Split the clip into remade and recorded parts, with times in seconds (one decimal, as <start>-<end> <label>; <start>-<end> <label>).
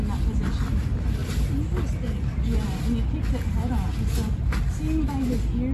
0.0-5.7 recorded